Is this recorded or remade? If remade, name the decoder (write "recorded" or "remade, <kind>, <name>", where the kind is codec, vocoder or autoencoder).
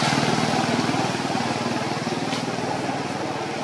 recorded